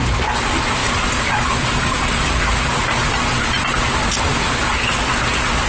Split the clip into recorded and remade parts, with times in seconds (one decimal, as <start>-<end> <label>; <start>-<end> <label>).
0.0-5.7 recorded